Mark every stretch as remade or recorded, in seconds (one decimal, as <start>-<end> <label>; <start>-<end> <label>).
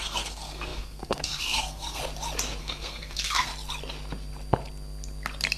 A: 0.0-2.0 remade; 2.0-2.6 recorded; 2.6-3.5 remade; 3.5-5.6 recorded